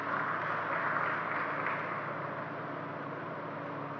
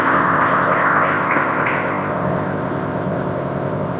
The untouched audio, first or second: first